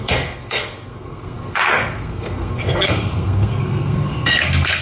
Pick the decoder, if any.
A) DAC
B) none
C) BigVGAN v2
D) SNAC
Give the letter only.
D